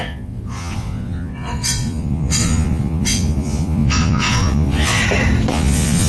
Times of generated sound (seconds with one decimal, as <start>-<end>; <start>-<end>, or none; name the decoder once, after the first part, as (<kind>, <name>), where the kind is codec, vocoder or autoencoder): 0.0-5.0 (vocoder, Vocos); 5.5-6.1